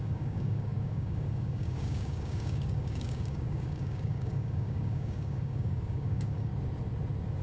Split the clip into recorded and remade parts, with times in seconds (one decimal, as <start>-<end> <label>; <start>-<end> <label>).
0.0-6.5 remade; 6.5-7.4 recorded